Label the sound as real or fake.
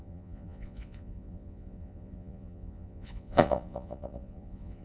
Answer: fake